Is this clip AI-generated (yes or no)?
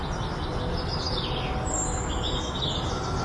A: no